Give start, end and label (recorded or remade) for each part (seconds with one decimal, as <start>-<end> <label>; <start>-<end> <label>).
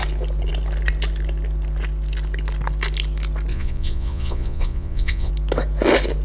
0.0-3.5 recorded; 3.5-5.3 remade; 5.3-6.2 recorded